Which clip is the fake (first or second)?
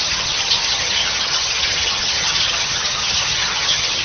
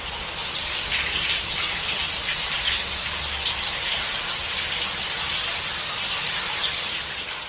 first